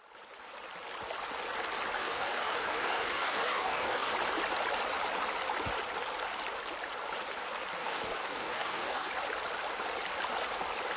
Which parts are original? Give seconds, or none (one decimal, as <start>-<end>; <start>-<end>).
0.0-2.0; 4.1-7.8; 9.1-11.0